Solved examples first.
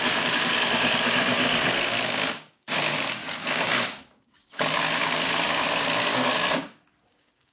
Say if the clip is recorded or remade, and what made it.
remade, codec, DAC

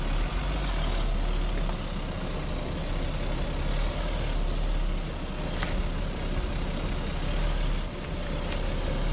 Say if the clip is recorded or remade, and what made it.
recorded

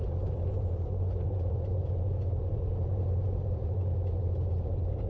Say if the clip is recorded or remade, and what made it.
remade, vocoder, BigVGAN v2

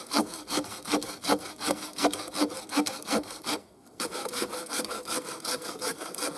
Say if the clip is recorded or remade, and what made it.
remade, codec, SNAC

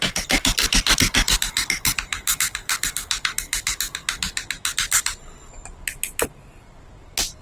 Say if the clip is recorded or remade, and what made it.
recorded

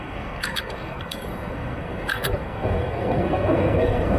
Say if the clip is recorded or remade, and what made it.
remade, codec, SNAC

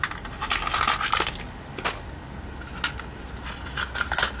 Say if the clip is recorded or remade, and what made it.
recorded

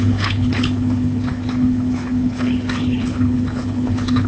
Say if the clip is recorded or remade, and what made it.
remade, codec, HILCodec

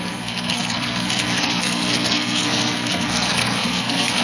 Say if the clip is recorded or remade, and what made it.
remade, codec, SNAC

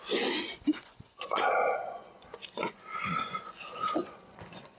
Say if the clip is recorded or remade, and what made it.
remade, vocoder, Vocos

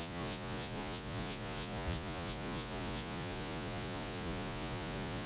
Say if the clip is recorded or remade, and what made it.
remade, vocoder, Vocos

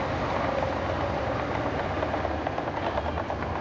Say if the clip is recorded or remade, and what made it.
recorded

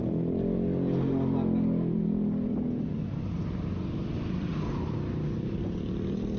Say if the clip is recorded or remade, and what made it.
recorded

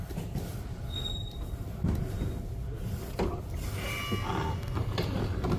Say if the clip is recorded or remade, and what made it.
recorded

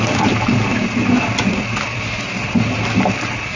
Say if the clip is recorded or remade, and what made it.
recorded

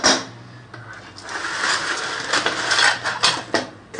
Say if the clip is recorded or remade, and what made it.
recorded